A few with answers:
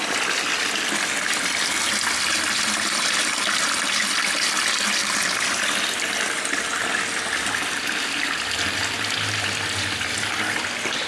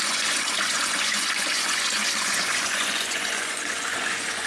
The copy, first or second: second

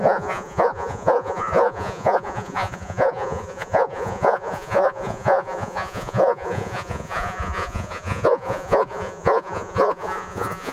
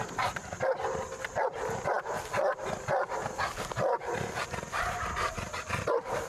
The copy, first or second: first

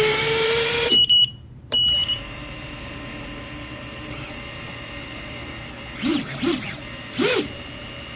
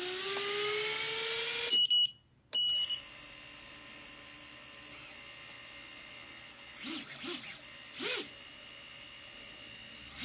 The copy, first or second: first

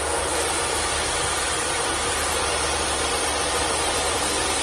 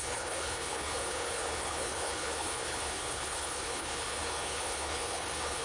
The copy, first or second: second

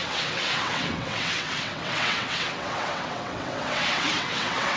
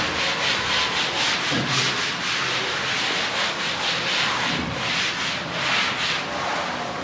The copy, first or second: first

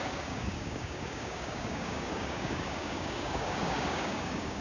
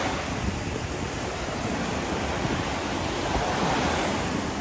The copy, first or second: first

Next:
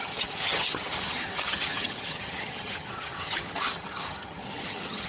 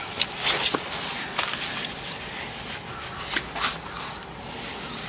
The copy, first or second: first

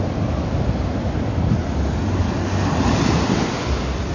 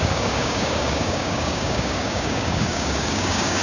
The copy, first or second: second